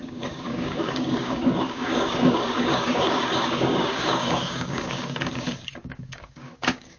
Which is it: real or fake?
fake